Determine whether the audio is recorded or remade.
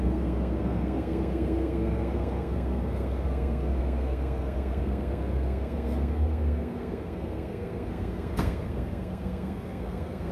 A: remade